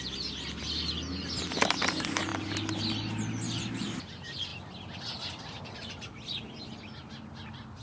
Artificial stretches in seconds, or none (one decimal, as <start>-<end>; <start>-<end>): none